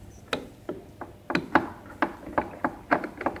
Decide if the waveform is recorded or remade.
recorded